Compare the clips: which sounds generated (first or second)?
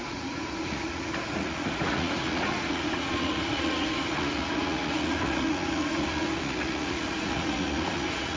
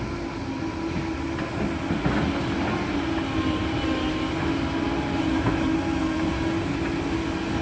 first